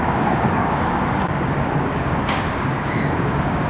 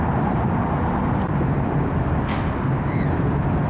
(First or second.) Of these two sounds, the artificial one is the first